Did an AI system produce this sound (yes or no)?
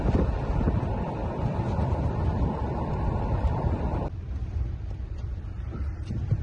yes